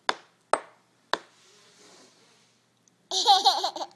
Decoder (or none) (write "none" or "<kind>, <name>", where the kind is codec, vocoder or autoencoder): none